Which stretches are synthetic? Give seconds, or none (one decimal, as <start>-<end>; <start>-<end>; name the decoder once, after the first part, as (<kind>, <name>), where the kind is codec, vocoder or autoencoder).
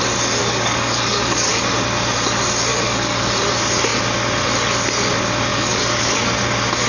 0.4-1.5 (codec, DAC); 2.7-3.3; 5.5-6.2